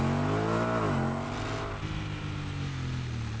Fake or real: real